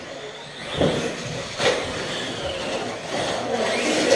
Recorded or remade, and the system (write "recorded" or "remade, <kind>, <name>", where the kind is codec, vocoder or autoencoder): recorded